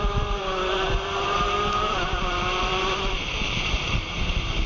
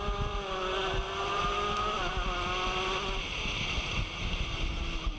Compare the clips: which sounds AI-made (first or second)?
first